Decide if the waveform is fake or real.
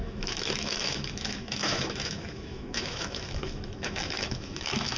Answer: fake